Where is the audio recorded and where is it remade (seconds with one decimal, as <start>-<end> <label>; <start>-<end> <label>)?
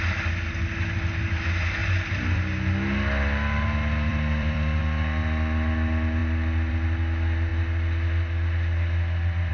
0.0-1.8 recorded; 1.8-2.4 remade; 2.4-4.1 recorded; 4.1-4.8 remade; 4.8-9.5 recorded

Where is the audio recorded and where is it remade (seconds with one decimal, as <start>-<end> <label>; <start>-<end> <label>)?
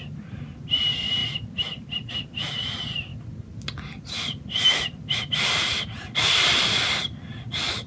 0.0-1.2 recorded; 1.2-2.1 remade; 2.1-7.9 recorded